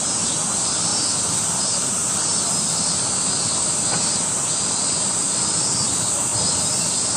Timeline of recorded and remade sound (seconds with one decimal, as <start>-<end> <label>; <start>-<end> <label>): 0.0-7.2 recorded